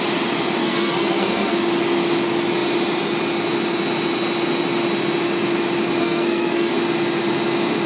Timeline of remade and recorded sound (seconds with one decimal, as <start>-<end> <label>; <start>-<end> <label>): 0.0-0.6 recorded; 0.6-1.5 remade; 1.5-6.0 recorded; 6.0-6.7 remade; 6.7-7.9 recorded